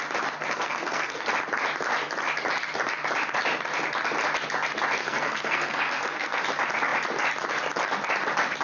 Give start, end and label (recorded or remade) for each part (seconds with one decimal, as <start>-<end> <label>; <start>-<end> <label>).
0.0-0.4 recorded; 0.4-1.3 remade; 1.3-5.0 recorded; 5.0-6.4 remade; 6.4-8.6 recorded